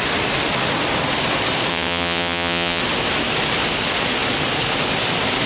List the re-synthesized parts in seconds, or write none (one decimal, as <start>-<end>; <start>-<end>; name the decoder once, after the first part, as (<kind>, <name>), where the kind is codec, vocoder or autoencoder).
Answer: 1.7-2.8 (vocoder, WaveNeXt)